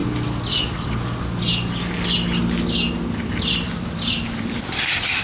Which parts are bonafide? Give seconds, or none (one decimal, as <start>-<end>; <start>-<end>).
0.0-3.1